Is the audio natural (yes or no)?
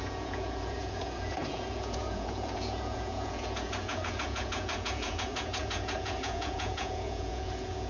no